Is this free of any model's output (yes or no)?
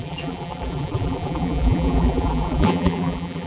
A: no